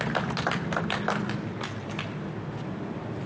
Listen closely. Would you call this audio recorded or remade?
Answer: recorded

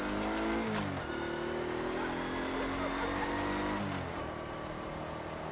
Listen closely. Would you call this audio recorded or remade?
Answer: recorded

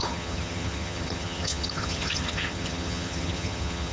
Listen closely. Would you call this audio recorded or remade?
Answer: remade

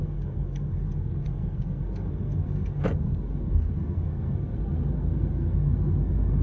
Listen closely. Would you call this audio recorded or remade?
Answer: remade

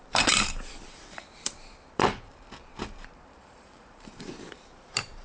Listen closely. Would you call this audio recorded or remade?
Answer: remade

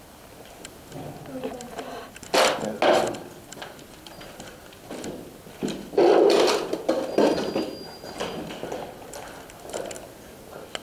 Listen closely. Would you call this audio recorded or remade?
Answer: recorded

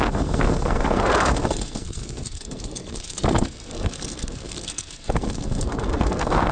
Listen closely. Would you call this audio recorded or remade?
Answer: remade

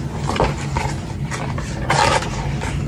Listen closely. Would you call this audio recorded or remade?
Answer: recorded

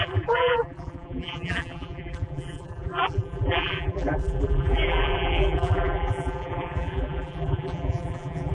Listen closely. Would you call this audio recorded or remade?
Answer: remade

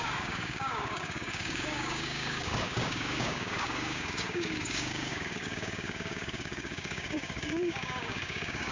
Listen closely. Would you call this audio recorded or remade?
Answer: remade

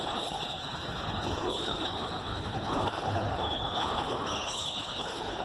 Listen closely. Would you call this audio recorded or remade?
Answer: remade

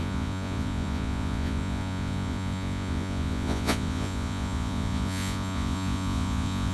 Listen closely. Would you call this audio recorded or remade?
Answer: remade